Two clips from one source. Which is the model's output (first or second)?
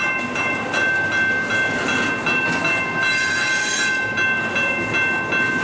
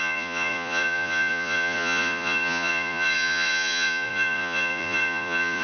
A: second